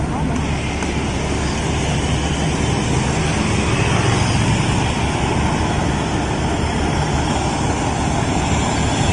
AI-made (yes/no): no